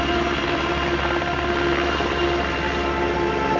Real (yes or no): yes